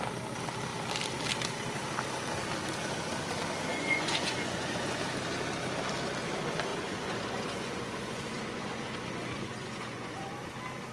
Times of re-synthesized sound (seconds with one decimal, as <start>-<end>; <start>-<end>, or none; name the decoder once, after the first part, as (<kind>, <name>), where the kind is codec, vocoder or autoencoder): 3.7-5.0 (vocoder, Vocos); 6.7-10.3